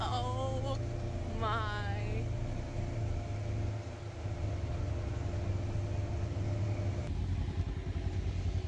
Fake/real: real